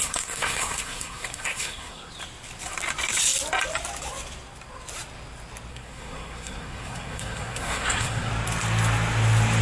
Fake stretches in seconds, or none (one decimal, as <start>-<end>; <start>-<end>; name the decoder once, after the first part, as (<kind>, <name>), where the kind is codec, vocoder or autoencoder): 0.0-2.1 (codec, SNAC); 5.7-8.3